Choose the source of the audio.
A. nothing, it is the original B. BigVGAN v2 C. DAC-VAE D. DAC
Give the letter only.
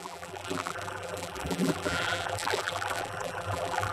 B